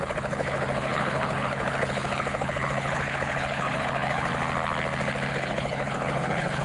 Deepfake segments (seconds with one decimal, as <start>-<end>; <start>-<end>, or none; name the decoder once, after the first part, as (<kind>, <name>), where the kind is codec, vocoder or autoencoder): 0.0-4.3 (codec, HILCodec); 5.3-6.6